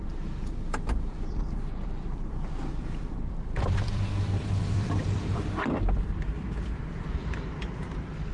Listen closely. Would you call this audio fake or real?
fake